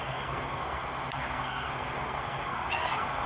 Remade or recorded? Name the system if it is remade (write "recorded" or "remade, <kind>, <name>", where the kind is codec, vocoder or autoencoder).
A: remade, codec, SNAC